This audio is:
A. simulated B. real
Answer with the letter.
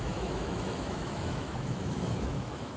A